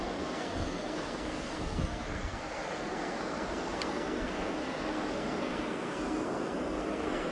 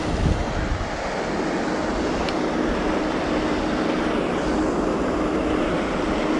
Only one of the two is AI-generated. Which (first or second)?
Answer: first